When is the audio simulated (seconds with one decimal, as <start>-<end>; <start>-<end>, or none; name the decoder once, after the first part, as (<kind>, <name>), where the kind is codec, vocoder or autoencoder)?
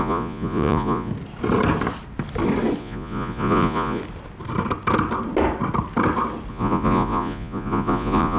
0.0-1.1 (vocoder, Vocos); 2.8-4.0; 6.5-8.4